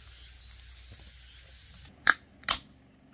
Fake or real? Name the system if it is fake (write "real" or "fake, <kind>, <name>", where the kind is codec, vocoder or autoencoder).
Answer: real